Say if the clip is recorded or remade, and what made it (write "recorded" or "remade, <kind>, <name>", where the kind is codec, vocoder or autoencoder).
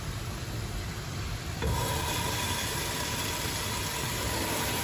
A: recorded